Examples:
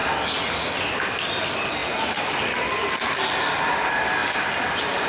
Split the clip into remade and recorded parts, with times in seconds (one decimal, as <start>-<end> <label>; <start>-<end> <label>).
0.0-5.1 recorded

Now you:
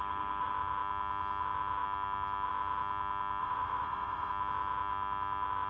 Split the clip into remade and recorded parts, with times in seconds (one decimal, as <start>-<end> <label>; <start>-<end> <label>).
0.0-3.4 recorded; 3.4-4.3 remade; 4.3-5.7 recorded

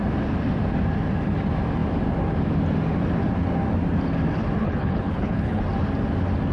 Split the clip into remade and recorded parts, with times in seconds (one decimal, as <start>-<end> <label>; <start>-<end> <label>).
0.0-4.6 recorded; 4.6-5.6 remade; 5.6-6.5 recorded

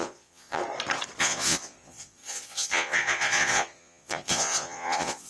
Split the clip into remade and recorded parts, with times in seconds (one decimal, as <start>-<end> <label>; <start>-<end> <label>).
0.0-0.6 remade; 0.6-1.2 recorded; 1.2-5.3 remade

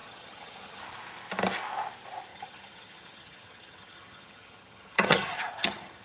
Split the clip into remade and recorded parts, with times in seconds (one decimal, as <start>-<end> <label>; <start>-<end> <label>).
0.0-0.8 remade; 0.8-2.3 recorded; 2.3-6.0 remade

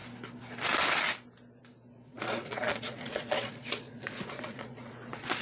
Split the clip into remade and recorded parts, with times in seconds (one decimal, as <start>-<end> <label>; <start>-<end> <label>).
0.0-2.1 recorded; 2.1-5.4 remade

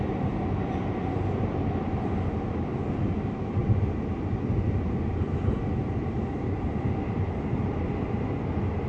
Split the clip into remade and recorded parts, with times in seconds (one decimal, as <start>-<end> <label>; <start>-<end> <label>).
0.0-8.9 recorded